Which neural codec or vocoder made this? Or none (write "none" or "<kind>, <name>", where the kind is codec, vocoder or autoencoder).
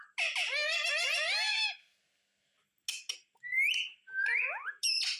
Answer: none